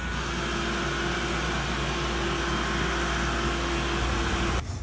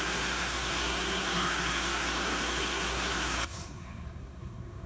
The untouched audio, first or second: first